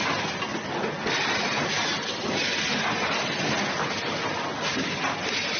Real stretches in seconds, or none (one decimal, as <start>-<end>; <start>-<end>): 0.0-5.6